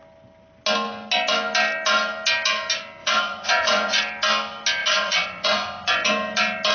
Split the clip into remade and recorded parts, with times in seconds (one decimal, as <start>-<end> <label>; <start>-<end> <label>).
0.0-3.0 recorded; 3.0-4.0 remade; 4.0-4.8 recorded; 4.8-6.1 remade; 6.1-6.7 recorded